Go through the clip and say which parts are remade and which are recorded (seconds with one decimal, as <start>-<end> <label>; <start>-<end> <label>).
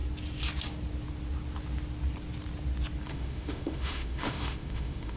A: 0.0-3.1 recorded; 3.1-5.2 remade